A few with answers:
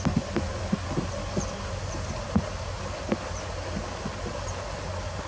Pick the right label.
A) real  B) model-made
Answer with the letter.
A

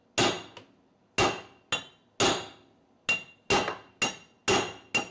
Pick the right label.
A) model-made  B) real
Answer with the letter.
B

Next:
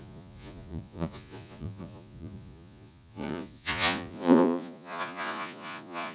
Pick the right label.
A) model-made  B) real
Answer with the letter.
A